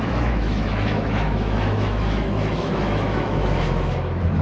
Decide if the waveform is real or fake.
fake